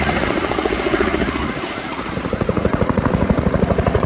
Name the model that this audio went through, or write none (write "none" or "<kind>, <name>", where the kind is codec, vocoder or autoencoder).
vocoder, Vocos